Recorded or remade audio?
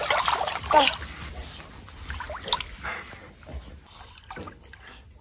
recorded